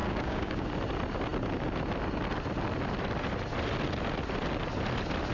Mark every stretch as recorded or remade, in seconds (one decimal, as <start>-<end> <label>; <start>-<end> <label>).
0.0-0.7 remade; 0.7-5.3 recorded